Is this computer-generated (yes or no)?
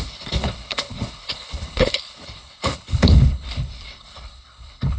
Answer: yes